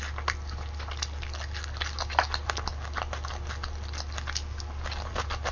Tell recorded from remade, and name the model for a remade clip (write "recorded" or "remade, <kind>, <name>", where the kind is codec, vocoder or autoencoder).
recorded